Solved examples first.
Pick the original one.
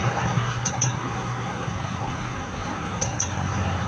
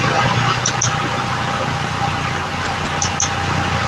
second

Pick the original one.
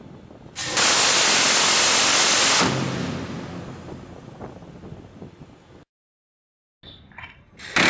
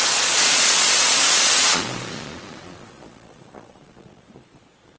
first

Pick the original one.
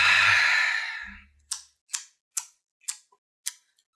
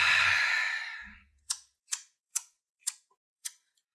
first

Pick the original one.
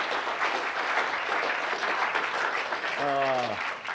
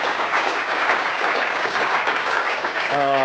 first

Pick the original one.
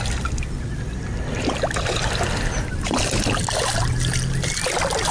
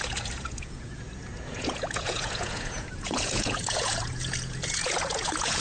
first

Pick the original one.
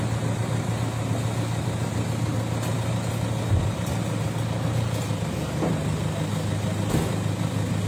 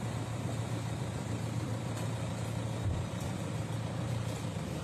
first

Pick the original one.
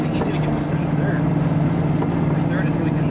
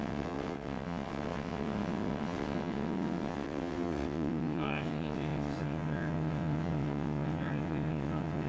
first